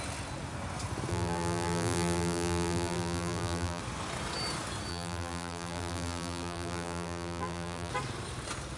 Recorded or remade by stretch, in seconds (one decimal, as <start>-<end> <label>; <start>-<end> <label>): 0.0-1.1 recorded; 1.1-3.8 remade; 3.8-4.9 recorded; 4.9-7.9 remade; 7.9-8.8 recorded